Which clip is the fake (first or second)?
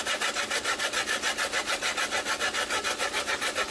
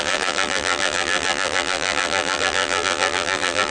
second